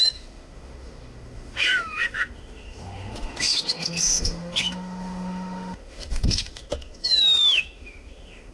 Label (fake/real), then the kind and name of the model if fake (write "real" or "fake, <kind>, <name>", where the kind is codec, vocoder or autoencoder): fake, autoencoder, DAC-VAE